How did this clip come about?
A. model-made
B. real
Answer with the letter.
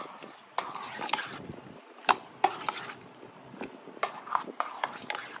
B